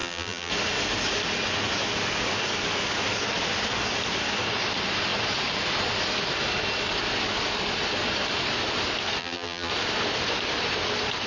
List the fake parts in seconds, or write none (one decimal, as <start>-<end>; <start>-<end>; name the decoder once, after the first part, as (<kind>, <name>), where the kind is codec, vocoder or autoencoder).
0.0-0.5 (vocoder, BigVGAN v2); 9.2-9.7